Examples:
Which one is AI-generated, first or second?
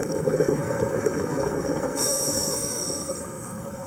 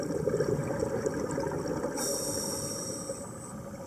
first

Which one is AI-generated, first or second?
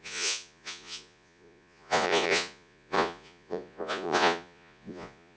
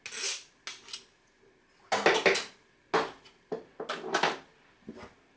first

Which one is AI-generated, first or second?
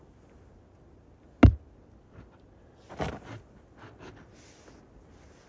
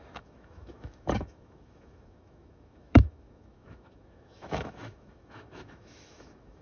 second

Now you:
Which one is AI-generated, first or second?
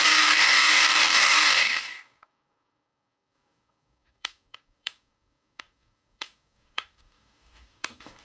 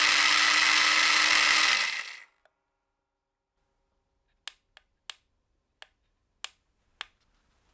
first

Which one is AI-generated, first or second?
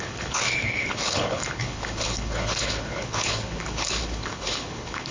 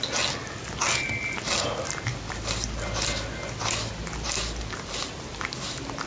first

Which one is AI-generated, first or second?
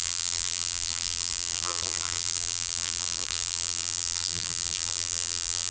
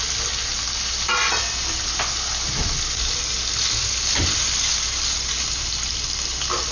first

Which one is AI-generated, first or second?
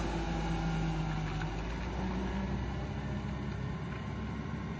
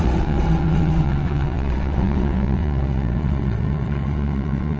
second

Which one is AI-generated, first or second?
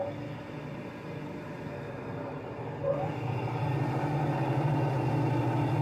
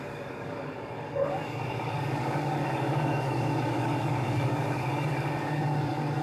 second